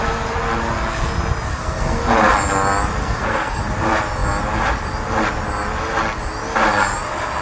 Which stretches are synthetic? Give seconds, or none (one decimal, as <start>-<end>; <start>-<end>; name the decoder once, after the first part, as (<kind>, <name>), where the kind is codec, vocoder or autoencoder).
1.5-2.0 (codec, SNAC); 3.0-3.6

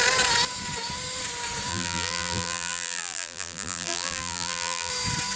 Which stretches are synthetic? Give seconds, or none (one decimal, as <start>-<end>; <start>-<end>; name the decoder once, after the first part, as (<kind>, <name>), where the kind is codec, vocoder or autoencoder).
1.7-4.9 (vocoder, BigVGAN v2)

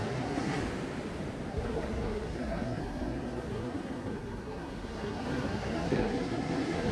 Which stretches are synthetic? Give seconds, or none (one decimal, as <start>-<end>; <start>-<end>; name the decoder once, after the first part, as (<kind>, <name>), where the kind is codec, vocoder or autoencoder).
0.0-0.6 (codec, SNAC); 1.5-6.9

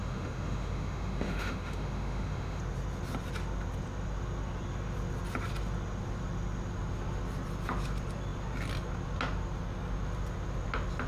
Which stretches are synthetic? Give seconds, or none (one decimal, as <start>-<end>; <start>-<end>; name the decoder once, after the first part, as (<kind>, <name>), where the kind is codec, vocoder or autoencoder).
0.0-2.6 (autoencoder, DAC-VAE)

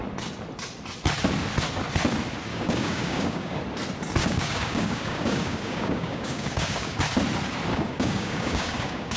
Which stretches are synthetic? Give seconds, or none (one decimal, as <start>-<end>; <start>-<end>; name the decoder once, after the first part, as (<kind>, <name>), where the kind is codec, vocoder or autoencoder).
2.5-3.6 (codec, DAC); 4.2-7.0; 7.7-9.2

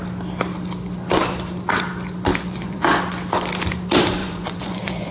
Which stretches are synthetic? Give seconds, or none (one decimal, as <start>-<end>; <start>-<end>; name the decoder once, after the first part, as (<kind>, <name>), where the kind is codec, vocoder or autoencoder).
2.3-3.0 (vocoder, Vocos); 4.2-5.1

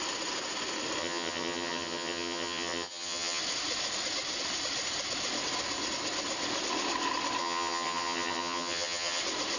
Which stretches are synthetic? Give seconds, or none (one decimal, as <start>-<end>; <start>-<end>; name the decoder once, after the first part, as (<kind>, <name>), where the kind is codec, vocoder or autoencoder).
1.0-3.4 (vocoder, HiFi-GAN); 7.4-9.2

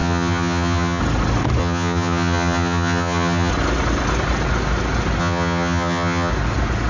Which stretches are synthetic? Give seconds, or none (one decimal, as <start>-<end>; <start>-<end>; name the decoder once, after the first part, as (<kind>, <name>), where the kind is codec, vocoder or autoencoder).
0.0-1.0 (vocoder, HiFi-GAN); 1.6-3.5; 5.2-6.3